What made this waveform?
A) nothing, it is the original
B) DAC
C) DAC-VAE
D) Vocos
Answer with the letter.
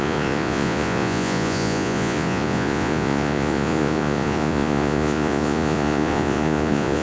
D